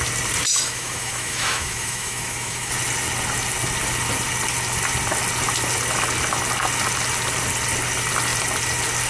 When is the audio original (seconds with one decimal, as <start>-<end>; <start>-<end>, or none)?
0.0-0.5; 2.7-9.1